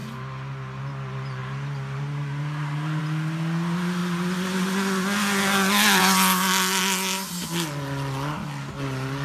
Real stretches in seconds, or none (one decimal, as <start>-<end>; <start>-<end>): 0.0-9.2